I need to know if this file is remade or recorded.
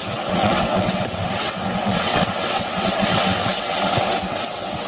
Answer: remade